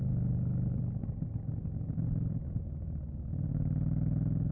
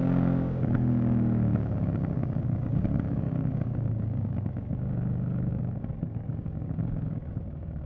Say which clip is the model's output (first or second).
second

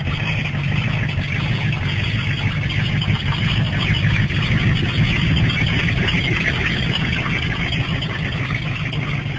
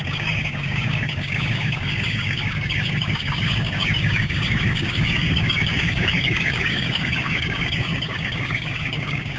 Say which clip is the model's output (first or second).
second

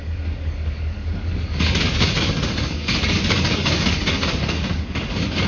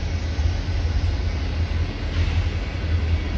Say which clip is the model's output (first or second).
first